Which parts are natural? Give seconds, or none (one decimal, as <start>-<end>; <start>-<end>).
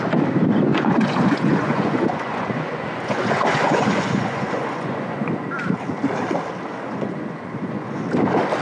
0.0-0.7; 5.3-6.7; 8.0-8.6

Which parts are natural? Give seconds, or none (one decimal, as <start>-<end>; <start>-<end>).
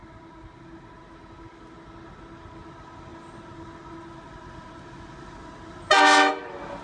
0.0-6.8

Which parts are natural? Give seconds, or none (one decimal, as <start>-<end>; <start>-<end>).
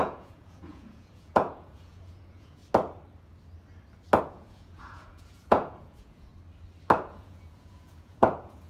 2.6-4.2; 6.3-7.0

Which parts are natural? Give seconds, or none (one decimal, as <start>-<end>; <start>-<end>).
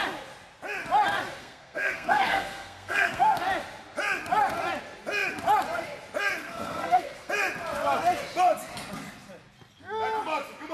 0.0-1.4; 3.4-6.4; 7.3-10.7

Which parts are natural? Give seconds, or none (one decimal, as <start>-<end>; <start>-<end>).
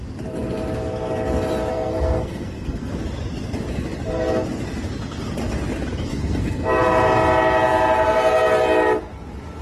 0.0-1.7; 2.9-6.1; 6.8-9.6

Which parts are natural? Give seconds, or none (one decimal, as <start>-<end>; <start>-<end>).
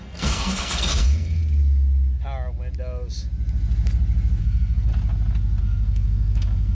1.4-4.4; 4.9-5.6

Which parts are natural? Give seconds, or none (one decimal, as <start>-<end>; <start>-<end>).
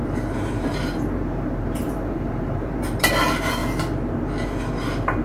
3.1-5.2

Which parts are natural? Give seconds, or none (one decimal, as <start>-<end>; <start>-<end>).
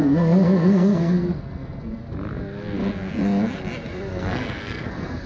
2.0-4.1